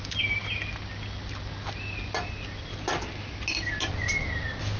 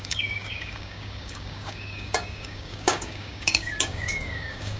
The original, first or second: first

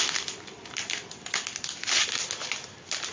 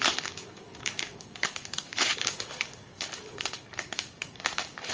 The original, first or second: first